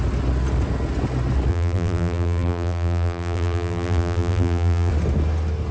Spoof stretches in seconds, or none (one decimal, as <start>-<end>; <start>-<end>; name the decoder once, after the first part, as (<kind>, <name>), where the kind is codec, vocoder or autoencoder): 1.5-4.9 (vocoder, BigVGAN v2)